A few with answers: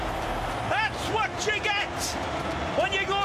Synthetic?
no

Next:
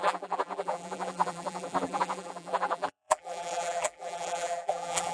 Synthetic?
yes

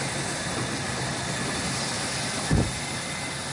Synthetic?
no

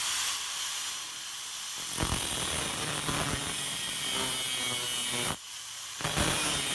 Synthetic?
no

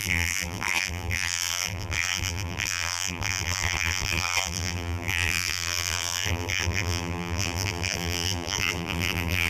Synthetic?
yes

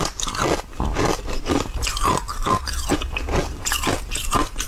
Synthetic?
no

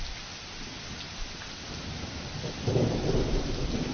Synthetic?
no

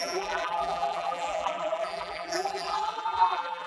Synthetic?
yes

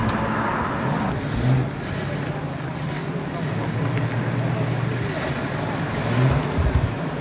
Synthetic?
no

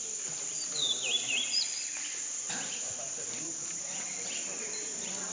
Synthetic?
no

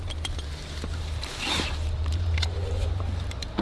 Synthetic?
yes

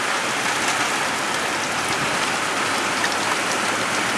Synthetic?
no